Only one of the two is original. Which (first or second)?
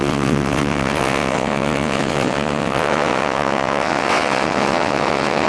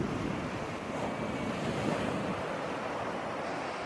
second